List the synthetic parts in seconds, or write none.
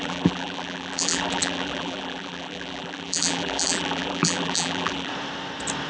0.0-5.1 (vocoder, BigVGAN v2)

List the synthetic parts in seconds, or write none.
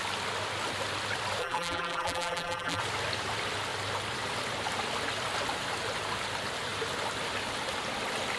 1.4-2.8 (vocoder, BigVGAN v2)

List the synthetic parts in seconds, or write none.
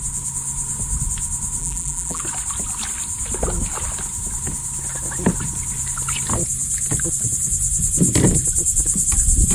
1.6-2.2 (vocoder, BigVGAN v2)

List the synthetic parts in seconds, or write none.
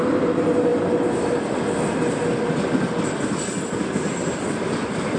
none